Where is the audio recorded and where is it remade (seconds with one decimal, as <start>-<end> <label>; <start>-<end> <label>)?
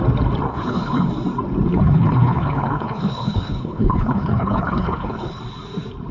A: 0.0-0.5 recorded; 0.5-1.1 remade; 1.1-1.7 recorded; 1.7-5.4 remade; 5.4-6.1 recorded